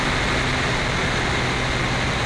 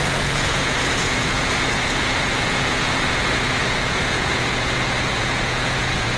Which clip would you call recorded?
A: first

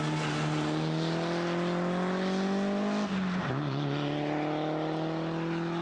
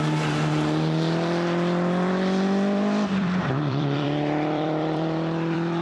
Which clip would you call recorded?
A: first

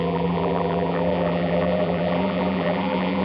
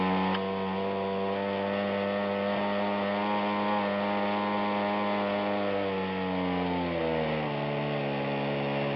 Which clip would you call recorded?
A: second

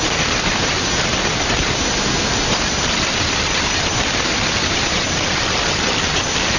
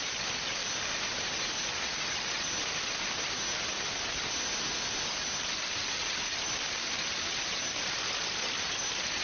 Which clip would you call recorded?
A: second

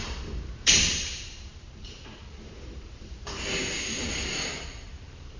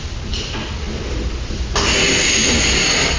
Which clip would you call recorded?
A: second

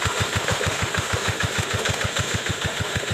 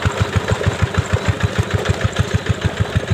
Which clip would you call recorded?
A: second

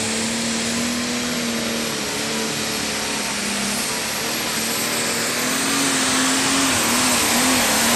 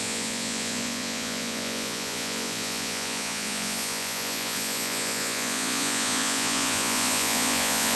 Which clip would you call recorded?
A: first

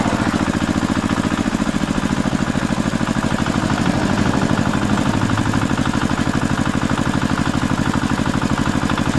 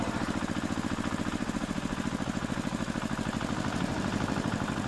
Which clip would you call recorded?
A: first